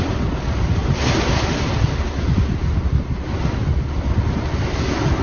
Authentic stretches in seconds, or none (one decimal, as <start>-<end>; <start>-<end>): 0.0-5.2